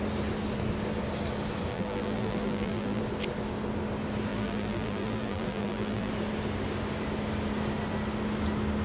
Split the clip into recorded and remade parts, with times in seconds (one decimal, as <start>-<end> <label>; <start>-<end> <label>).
0.0-1.7 recorded; 1.7-3.0 remade; 3.0-4.3 recorded; 4.3-6.1 remade; 6.1-8.8 recorded